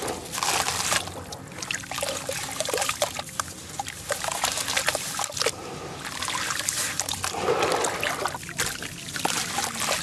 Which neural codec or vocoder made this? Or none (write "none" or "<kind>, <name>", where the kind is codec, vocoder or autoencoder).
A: none